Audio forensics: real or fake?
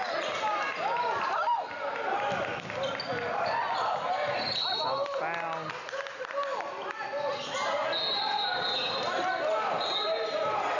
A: real